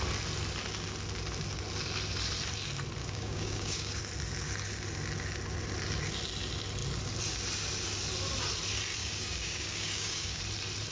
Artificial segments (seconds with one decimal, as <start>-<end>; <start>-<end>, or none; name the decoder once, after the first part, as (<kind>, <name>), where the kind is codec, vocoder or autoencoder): 3.0-4.0 (codec, DAC); 9.0-10.4